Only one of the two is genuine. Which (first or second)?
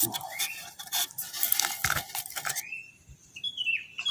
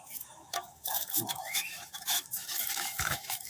first